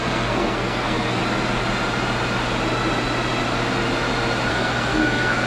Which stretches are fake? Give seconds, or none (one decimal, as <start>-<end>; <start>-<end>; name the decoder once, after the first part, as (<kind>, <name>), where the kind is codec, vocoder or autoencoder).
0.0-1.2 (codec, SNAC); 4.5-5.5